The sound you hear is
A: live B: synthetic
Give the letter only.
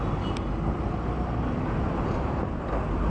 A